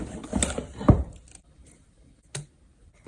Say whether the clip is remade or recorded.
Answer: recorded